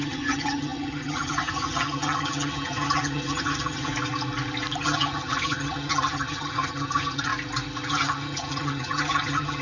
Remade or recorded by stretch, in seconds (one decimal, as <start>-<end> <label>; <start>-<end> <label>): 0.0-3.9 remade; 3.9-4.8 recorded; 4.8-7.3 remade; 7.3-7.9 recorded; 7.9-9.6 remade